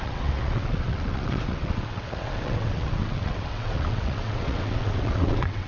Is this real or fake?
fake